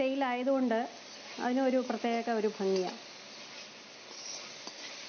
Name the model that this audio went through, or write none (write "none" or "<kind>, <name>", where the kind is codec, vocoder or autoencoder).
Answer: none